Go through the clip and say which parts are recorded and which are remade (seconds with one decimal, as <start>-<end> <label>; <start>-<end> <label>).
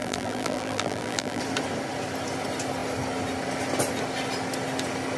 0.0-1.4 remade; 1.4-5.2 recorded